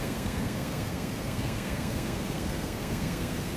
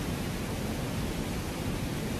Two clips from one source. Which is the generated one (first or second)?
first